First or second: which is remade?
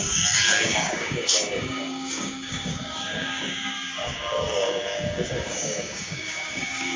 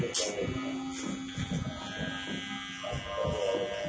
first